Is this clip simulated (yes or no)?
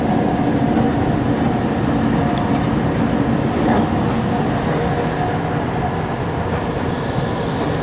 no